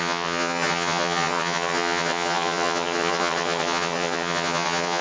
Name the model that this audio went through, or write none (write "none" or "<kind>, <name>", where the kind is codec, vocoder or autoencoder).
vocoder, HiFi-GAN